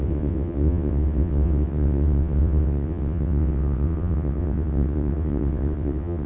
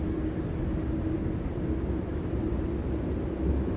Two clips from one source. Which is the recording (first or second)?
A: second